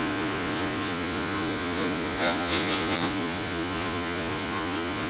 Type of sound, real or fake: fake